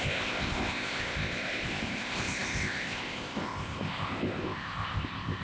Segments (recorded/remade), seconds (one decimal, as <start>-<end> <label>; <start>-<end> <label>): 0.0-5.4 remade